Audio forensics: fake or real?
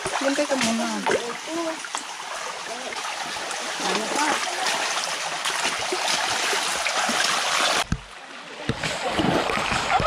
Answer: real